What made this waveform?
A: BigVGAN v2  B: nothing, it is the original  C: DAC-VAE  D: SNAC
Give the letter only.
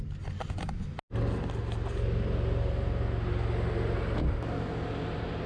B